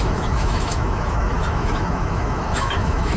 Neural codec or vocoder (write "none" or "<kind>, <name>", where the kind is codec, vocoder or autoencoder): autoencoder, DAC-VAE